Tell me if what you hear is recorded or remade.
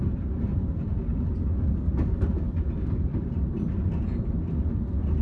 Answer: recorded